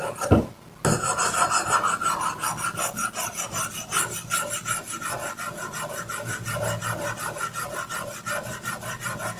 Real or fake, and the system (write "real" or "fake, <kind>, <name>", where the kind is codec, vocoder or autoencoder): real